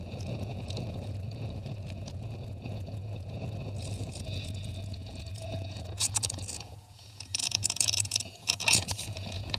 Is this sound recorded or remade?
remade